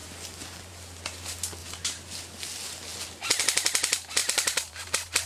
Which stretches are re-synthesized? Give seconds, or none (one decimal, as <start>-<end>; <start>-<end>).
1.6-2.2; 4.2-5.3